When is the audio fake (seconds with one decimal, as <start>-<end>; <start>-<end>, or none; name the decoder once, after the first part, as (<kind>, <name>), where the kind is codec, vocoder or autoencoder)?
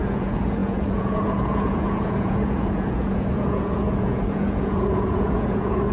0.0-5.9 (vocoder, Vocos)